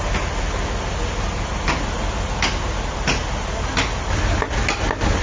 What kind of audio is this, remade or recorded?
recorded